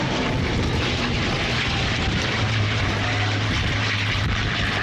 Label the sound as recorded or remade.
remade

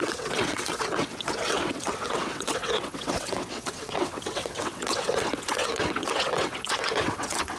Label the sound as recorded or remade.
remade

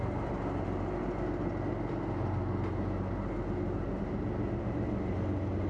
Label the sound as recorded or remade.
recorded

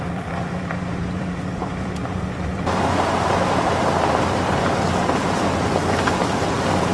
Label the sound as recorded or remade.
remade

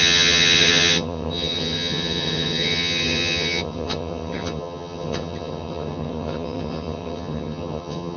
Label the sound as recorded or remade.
remade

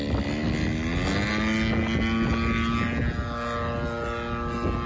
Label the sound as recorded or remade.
recorded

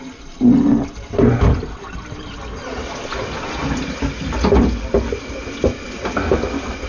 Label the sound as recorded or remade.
recorded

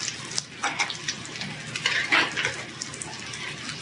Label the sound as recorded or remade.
recorded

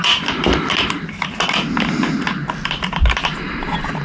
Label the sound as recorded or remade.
recorded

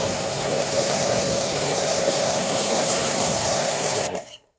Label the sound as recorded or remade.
remade